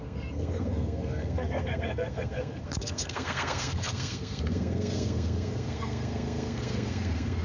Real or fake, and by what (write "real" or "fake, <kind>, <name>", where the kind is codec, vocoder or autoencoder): fake, codec, SNAC